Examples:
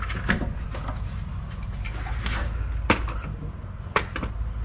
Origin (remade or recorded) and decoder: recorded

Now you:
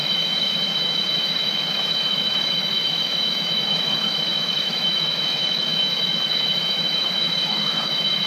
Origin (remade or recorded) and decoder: remade, autoencoder, DAC-VAE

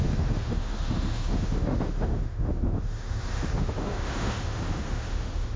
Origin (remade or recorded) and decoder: remade, autoencoder, DAC-VAE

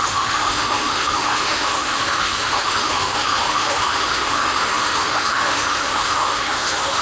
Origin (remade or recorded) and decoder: remade, autoencoder, DAC-VAE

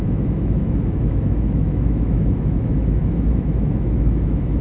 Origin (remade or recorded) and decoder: remade, autoencoder, DAC-VAE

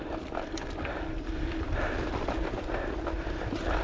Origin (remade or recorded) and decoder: recorded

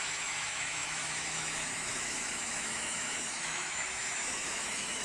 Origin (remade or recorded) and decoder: remade, autoencoder, DAC-VAE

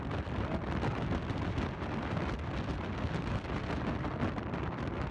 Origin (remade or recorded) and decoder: recorded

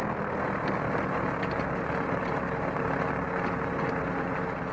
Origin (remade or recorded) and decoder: recorded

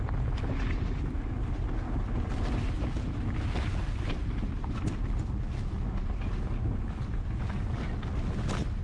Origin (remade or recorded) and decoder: recorded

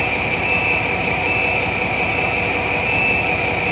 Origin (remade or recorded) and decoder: recorded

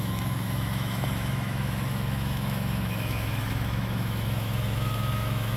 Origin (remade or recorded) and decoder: remade, autoencoder, DAC-VAE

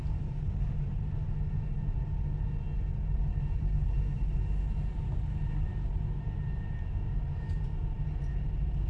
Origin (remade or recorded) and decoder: recorded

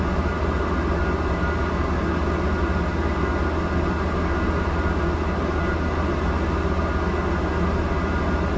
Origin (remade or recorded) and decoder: recorded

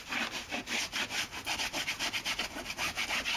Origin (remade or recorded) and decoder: recorded